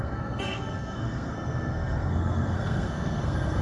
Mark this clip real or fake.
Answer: fake